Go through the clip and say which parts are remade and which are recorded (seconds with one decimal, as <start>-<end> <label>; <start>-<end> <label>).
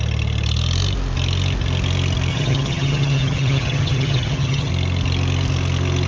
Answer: 0.0-2.3 recorded; 2.3-4.7 remade; 4.7-6.1 recorded